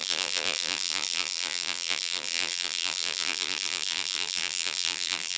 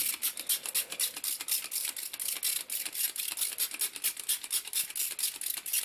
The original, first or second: second